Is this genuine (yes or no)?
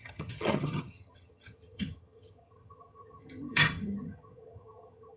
no